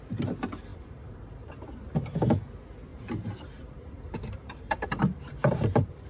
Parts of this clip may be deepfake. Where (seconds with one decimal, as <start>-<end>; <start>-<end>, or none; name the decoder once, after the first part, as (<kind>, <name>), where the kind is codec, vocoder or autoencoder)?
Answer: 0.7-1.5 (vocoder, BigVGAN v2); 2.9-6.1